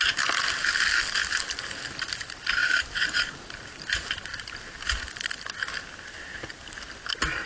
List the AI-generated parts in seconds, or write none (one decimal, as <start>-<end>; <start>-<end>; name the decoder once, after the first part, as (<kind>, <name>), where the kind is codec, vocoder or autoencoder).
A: 2.6-3.2 (vocoder, BigVGAN v2)